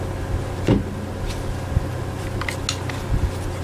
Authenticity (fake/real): real